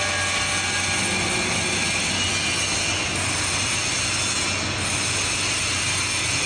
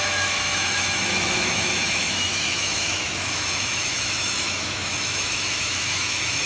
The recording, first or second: first